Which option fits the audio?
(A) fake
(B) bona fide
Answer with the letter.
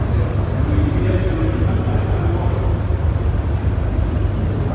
B